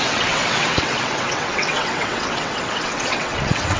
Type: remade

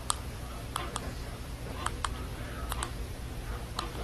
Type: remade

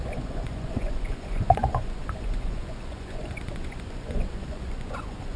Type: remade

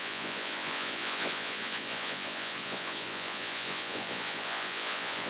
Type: remade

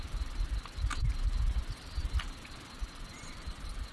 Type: remade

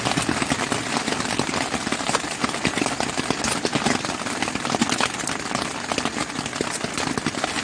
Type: recorded